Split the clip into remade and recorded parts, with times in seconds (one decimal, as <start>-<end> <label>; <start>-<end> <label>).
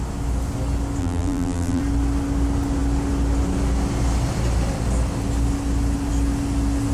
0.0-1.0 recorded; 1.0-1.8 remade; 1.8-6.9 recorded